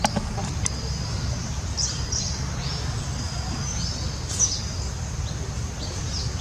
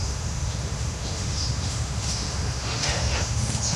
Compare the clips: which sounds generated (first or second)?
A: second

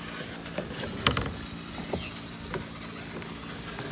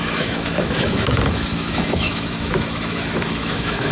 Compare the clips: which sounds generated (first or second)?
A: second